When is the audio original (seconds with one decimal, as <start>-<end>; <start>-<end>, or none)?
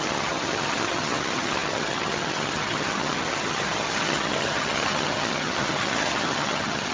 none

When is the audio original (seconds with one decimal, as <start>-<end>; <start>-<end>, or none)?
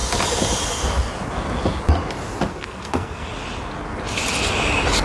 0.0-2.5; 3.3-5.0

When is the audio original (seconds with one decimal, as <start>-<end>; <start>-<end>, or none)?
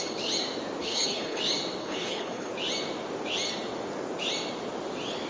0.0-0.8; 1.4-1.8; 2.5-5.3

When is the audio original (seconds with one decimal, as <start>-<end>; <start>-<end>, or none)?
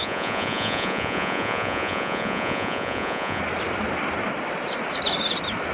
3.4-5.7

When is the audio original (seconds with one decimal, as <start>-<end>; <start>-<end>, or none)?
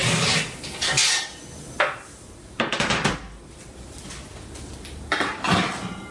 0.0-6.1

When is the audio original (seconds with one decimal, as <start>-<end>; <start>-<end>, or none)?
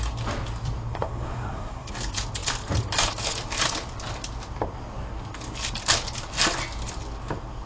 0.0-0.9; 1.9-7.7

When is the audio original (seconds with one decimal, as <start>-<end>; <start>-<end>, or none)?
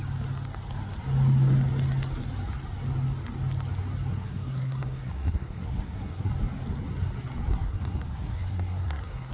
0.0-4.1; 6.3-7.5